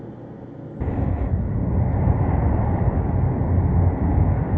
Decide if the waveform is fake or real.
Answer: real